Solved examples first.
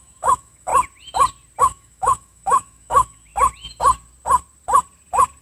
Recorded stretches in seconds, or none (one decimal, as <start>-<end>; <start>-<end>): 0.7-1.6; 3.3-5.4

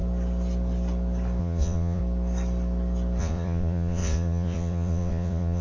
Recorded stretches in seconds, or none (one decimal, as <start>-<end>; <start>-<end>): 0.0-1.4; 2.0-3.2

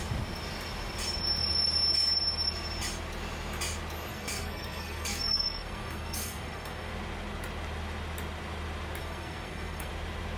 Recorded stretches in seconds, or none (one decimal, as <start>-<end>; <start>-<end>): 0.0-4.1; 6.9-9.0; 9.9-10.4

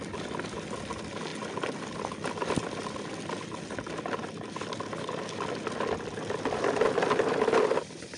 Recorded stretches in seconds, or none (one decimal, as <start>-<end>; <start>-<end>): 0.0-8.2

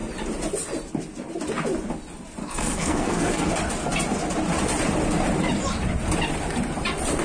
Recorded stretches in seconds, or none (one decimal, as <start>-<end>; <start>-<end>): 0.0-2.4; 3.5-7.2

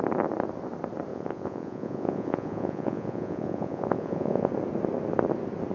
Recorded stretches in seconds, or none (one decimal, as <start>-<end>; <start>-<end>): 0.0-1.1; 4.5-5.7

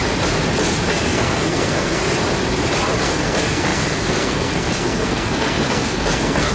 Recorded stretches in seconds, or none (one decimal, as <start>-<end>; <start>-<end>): 0.0-0.9; 2.0-3.0

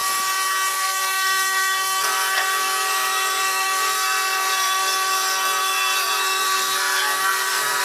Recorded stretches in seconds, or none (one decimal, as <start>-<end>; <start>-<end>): 0.0-0.7